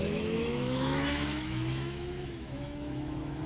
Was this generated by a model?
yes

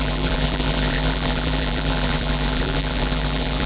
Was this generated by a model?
yes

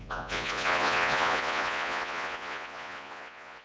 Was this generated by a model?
yes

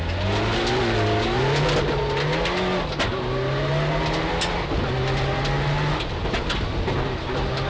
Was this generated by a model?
no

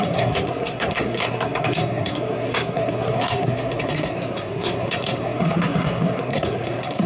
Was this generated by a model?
yes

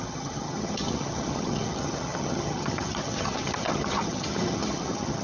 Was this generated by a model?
yes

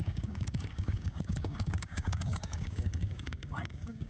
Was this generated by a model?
yes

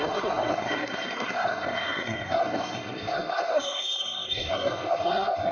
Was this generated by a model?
yes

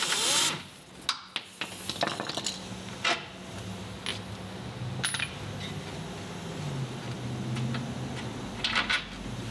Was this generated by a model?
no